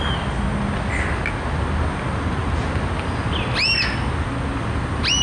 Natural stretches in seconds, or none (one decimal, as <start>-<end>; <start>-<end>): 0.0-5.2